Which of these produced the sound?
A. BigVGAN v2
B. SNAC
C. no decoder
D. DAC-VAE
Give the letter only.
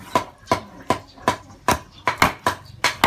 C